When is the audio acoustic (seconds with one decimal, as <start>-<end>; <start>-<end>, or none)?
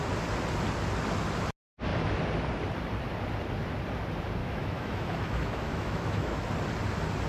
0.0-4.4; 6.5-7.3